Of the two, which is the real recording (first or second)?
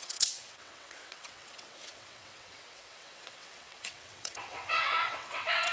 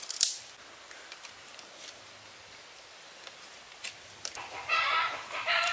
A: second